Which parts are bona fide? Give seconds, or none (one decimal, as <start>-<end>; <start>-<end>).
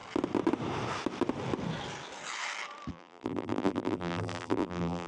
0.0-2.9